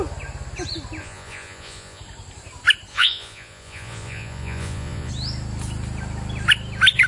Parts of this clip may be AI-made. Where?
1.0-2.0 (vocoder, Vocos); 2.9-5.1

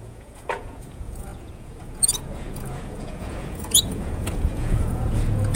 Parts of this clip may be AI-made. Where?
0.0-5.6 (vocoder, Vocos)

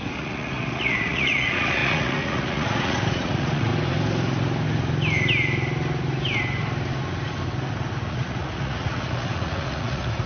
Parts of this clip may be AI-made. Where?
0.0-3.7 (vocoder, Vocos); 8.1-10.3